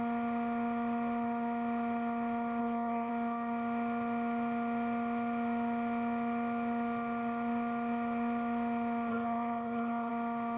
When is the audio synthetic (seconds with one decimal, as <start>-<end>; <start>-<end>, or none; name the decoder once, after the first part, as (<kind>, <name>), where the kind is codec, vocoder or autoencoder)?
2.6-3.1 (codec, SNAC); 9.1-10.1